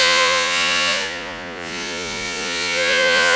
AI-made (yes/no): yes